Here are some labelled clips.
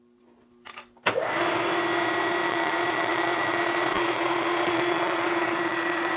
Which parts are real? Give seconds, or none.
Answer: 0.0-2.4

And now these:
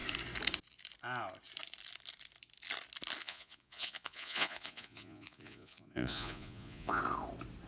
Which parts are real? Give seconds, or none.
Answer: 0.0-3.2; 7.0-7.7

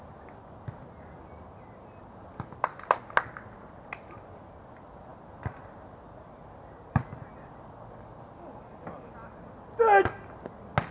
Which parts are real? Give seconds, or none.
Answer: 0.0-10.9

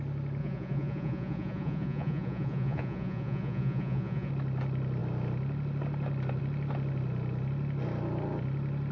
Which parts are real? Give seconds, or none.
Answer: 0.0-0.4; 4.3-8.9